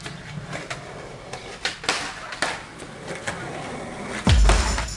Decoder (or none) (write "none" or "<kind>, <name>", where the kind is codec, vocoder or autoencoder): none